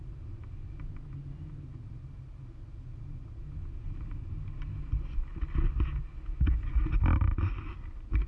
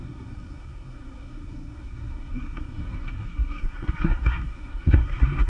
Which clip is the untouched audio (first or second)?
first